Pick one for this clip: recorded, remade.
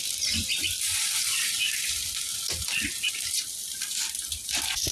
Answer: recorded